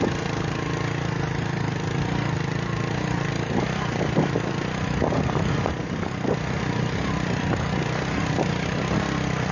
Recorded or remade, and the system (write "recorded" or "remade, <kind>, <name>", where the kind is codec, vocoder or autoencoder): recorded